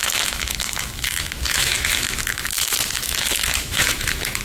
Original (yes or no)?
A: no